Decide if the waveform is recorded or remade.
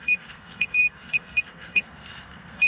remade